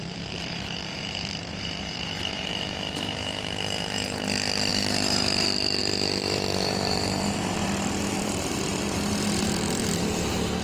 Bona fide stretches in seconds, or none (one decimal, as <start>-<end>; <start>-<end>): 8.8-9.4